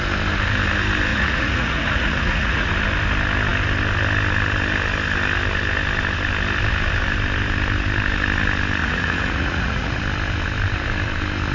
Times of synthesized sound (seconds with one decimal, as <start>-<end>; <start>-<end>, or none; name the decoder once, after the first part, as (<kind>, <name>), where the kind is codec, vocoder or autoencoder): 1.1-2.7 (vocoder, Vocos); 8.8-10.0